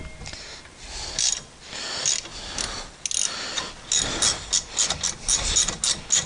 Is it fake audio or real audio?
real